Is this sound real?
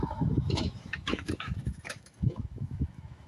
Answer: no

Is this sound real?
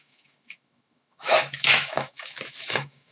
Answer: no